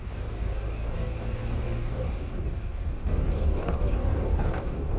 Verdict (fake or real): fake